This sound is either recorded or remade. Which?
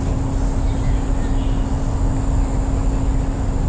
recorded